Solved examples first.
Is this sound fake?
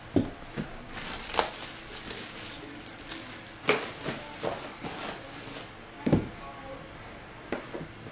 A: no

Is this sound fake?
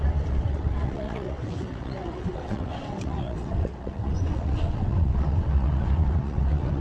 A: yes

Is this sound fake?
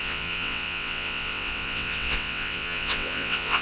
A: yes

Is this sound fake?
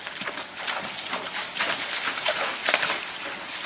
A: no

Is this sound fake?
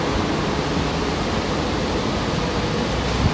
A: no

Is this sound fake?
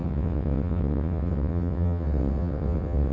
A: yes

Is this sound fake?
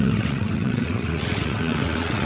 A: yes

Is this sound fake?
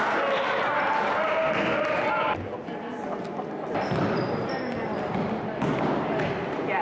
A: no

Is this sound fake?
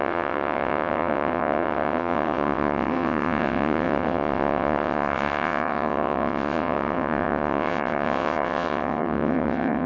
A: yes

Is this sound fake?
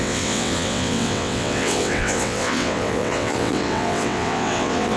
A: yes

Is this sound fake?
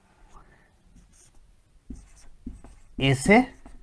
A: no